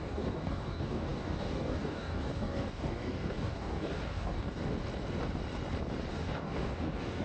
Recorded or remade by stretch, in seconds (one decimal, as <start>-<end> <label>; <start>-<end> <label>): 0.0-4.6 remade; 4.6-6.1 recorded; 6.1-7.2 remade